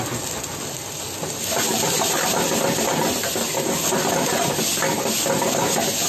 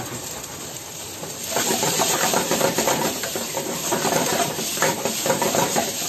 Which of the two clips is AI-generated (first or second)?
second